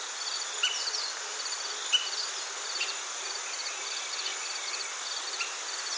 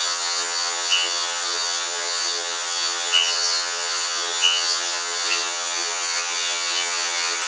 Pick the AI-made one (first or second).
second